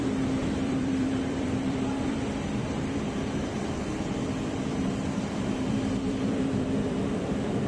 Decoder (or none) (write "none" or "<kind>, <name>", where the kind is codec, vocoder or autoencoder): vocoder, BigVGAN v2